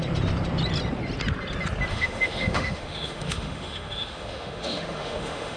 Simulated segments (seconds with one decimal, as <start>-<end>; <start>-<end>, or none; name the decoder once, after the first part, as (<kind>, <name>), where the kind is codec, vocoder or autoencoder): 1.9-5.6 (autoencoder, DAC-VAE)